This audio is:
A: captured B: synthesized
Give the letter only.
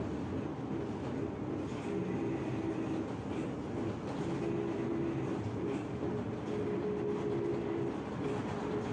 A